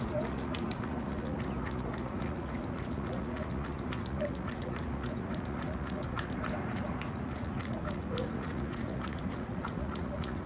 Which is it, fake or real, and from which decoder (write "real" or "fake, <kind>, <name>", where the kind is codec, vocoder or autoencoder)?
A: fake, vocoder, Vocos